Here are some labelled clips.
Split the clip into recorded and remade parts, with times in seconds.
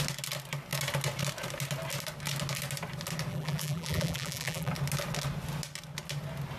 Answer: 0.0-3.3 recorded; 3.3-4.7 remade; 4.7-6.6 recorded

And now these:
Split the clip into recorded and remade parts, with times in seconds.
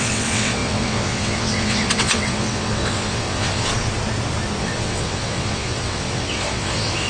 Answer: 0.0-3.7 remade; 3.7-4.6 recorded; 4.6-7.1 remade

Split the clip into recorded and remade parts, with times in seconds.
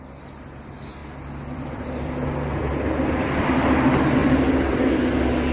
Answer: 0.0-1.0 recorded; 1.0-2.1 remade; 2.1-4.2 recorded; 4.2-4.8 remade; 4.8-5.5 recorded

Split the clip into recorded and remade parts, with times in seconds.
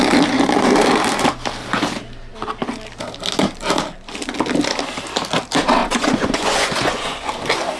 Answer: 0.0-5.8 recorded; 5.8-7.3 remade; 7.3-7.8 recorded